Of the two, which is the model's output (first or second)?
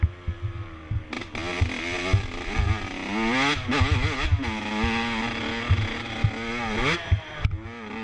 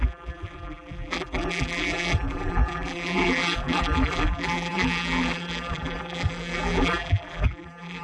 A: second